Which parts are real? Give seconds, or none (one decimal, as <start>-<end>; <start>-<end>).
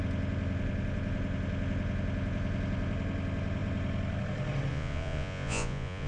0.0-4.7